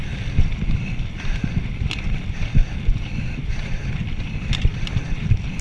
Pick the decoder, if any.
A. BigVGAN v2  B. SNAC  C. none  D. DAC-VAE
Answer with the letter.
C